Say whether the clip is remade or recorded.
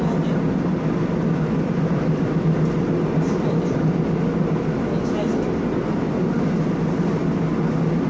recorded